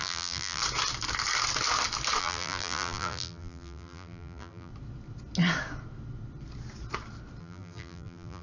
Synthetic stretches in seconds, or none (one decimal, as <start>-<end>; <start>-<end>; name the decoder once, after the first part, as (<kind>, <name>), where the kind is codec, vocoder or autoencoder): 0.0-0.6 (vocoder, BigVGAN v2); 2.2-4.7; 7.4-8.4